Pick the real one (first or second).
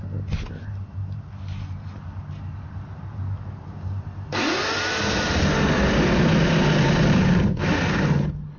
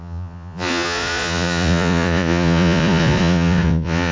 first